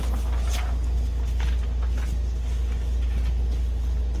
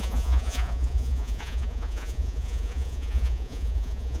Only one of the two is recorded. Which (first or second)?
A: first